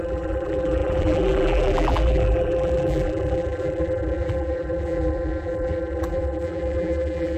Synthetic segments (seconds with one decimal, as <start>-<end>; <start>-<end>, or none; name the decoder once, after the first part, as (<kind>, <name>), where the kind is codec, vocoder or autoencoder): 0.0-7.4 (vocoder, BigVGAN v2)